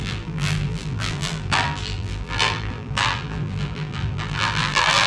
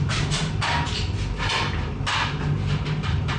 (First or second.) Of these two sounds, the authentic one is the second